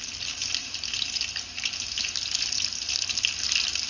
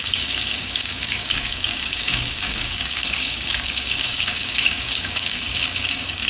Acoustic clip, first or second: first